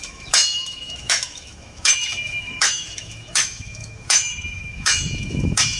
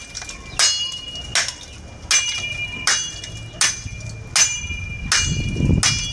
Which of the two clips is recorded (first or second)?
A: second